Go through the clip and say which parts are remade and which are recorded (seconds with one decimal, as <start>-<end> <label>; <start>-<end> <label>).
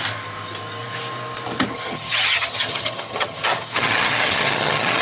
0.0-1.7 recorded; 1.7-5.0 remade